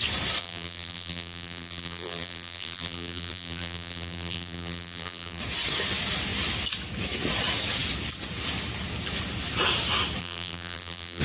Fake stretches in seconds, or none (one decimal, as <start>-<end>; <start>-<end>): 0.4-5.4; 10.2-11.2